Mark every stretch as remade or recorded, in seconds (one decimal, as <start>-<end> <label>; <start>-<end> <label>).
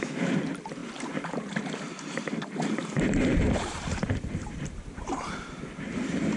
0.0-0.8 recorded; 0.8-1.6 remade; 1.6-2.8 recorded; 2.8-6.0 remade; 6.0-6.4 recorded